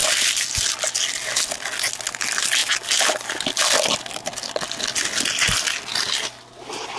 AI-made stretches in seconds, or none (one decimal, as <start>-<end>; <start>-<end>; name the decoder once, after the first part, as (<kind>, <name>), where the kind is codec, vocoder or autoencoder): none